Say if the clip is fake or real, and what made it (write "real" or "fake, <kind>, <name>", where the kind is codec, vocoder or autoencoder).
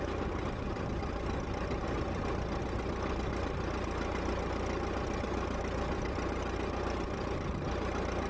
real